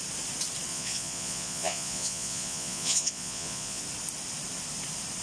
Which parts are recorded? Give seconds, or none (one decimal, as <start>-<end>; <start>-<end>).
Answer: 0.0-0.7; 3.8-5.2